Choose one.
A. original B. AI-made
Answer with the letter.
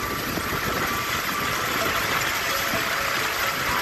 A